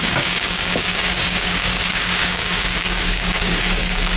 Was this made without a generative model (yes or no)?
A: no